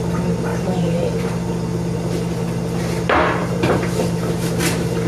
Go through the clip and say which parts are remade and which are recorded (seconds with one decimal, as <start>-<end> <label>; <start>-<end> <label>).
0.0-0.5 recorded; 0.5-1.5 remade; 1.5-3.4 recorded; 3.4-4.5 remade; 4.5-5.1 recorded

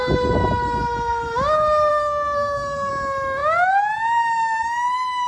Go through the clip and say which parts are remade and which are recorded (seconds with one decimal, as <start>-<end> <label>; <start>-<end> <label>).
0.0-1.9 recorded; 1.9-2.9 remade; 2.9-5.3 recorded